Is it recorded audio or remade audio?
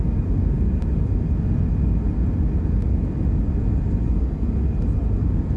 recorded